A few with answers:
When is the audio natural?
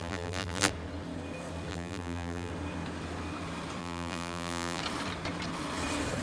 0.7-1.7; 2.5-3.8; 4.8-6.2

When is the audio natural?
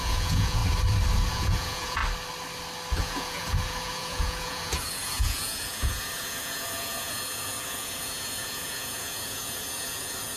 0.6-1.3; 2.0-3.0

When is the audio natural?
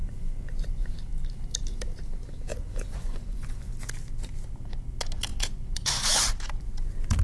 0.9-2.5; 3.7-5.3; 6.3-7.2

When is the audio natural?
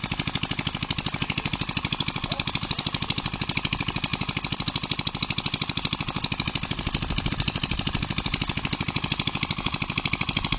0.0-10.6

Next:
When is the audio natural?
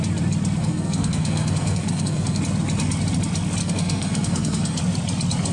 0.0-0.6; 2.4-3.6; 4.8-5.5